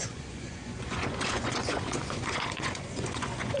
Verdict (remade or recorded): remade